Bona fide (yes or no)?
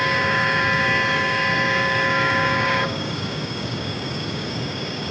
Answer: no